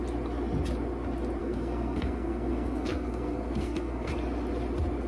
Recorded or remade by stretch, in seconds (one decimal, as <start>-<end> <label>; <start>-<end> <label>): 0.0-1.4 recorded; 1.4-4.1 remade; 4.1-5.1 recorded